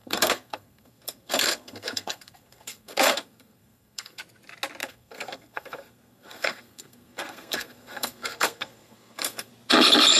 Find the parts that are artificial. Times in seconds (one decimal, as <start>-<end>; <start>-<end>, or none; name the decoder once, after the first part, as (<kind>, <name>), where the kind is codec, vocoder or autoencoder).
0.0-4.2 (codec, SNAC); 4.8-9.5